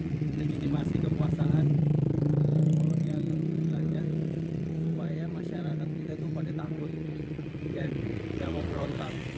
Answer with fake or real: fake